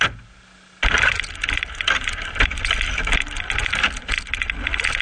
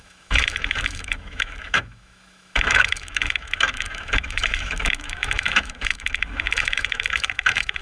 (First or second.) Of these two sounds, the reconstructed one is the second